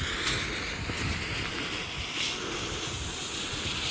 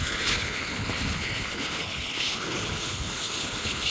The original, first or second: first